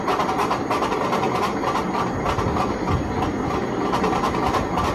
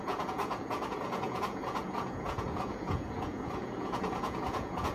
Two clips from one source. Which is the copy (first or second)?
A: second